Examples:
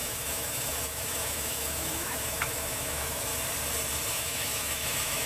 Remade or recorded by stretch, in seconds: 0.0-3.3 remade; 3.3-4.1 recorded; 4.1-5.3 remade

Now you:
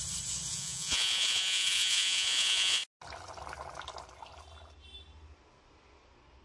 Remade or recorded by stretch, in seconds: 0.0-0.5 recorded; 0.5-2.8 remade; 2.8-6.4 recorded

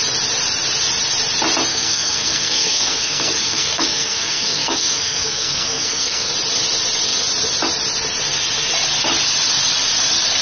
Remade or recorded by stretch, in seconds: 0.0-1.7 recorded; 1.7-6.3 remade; 6.3-10.4 recorded

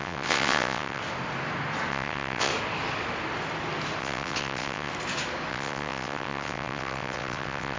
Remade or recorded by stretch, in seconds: 0.0-1.0 remade; 1.0-1.9 recorded; 1.9-2.5 remade; 2.5-4.0 recorded; 4.0-4.9 remade; 4.9-5.5 recorded; 5.5-7.8 remade